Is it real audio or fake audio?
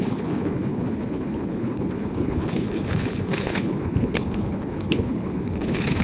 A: fake